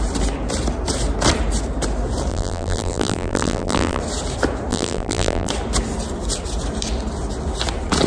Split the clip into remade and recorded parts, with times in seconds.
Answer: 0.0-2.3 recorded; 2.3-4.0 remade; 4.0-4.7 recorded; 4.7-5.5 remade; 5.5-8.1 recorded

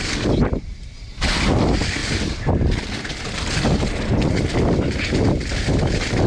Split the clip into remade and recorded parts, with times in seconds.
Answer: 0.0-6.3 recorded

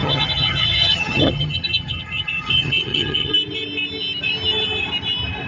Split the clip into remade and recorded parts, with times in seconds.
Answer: 0.0-3.3 remade; 3.3-5.5 recorded